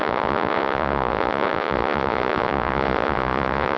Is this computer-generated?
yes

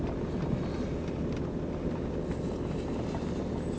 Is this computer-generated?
no